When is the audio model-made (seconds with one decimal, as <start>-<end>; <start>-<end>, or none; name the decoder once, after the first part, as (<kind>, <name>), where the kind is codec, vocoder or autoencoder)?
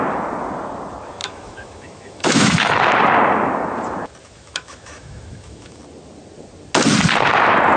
1.2-2.7 (autoencoder, DAC-VAE); 4.2-5.8